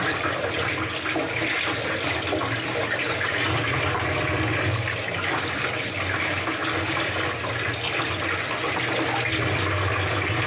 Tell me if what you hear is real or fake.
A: real